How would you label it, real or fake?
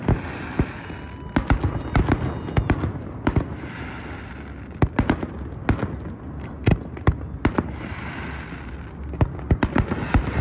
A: real